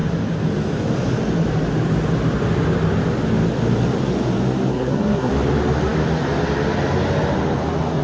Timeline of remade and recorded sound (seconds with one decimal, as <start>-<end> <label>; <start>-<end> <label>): 0.0-4.7 recorded; 4.7-5.3 remade; 5.3-8.0 recorded